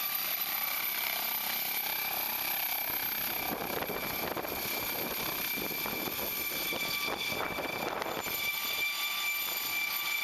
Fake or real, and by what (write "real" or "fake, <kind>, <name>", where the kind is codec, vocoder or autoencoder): fake, vocoder, BigVGAN v2